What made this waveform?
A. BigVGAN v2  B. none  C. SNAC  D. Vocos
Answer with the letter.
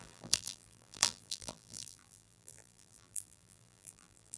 A